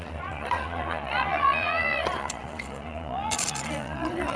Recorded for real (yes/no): no